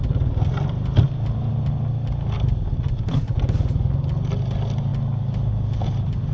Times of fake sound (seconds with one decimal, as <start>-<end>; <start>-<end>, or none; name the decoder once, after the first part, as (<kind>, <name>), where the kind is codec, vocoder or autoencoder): none